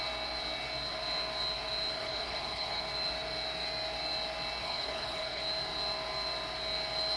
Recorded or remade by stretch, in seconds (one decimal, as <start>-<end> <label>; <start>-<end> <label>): 0.0-2.0 recorded; 2.0-2.8 remade; 2.8-4.6 recorded; 4.6-5.4 remade; 5.4-7.2 recorded